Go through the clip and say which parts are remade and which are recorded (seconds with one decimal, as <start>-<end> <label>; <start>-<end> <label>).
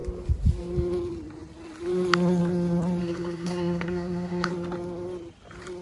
0.0-3.0 recorded; 3.0-4.5 remade; 4.5-5.8 recorded